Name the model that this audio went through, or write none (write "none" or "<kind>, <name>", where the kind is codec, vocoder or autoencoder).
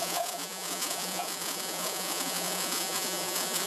vocoder, Vocos